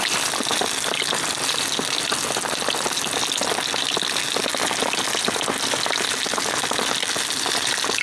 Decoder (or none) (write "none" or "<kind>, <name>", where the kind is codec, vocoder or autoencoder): none